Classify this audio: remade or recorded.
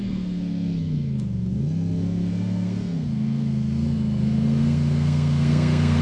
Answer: remade